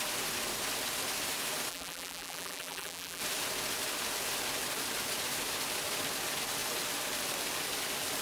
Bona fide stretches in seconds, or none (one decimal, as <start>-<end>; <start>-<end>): 0.0-1.7; 3.2-8.2